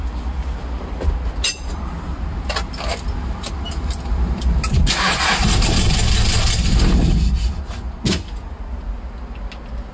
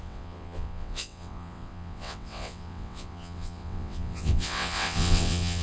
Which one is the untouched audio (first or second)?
first